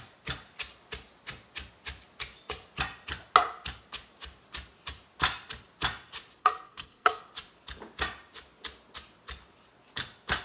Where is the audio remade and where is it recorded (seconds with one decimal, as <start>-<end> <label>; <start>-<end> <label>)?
0.0-6.4 recorded; 6.4-7.2 remade; 7.2-10.4 recorded